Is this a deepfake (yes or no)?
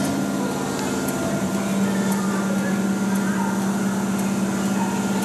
no